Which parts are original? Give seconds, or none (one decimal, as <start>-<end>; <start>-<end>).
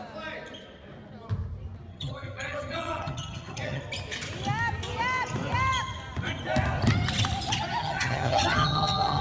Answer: 0.0-1.9; 3.8-7.8